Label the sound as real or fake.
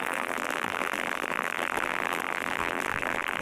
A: fake